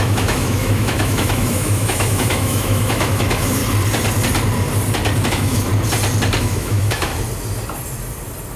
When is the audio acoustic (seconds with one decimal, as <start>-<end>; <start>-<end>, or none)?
3.6-5.3; 5.7-6.4; 7.1-8.6